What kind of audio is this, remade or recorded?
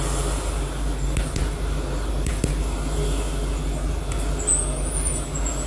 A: recorded